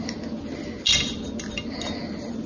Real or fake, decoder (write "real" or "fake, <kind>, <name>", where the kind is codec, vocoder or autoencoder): real